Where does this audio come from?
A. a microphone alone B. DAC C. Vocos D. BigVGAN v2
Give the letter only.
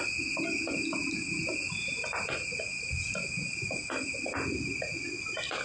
A